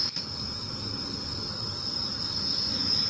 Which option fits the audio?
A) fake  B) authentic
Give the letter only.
B